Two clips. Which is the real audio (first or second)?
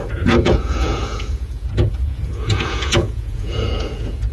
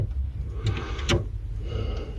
second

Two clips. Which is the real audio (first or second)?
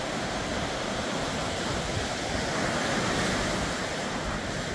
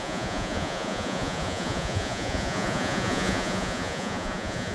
first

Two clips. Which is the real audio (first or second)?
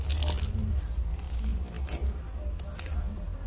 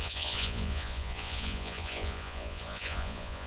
first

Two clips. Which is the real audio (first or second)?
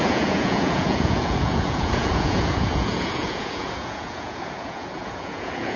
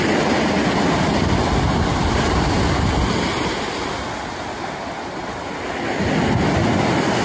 second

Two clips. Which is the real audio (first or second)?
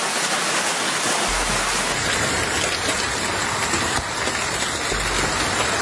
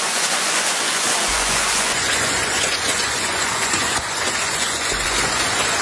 first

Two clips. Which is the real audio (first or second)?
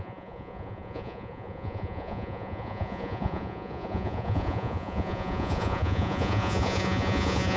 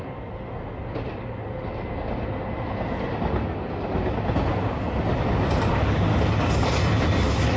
second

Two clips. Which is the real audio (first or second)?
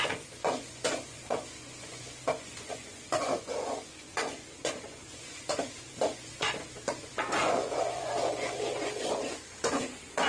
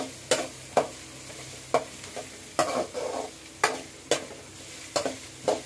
second